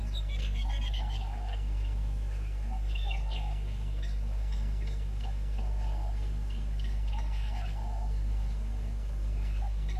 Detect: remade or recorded remade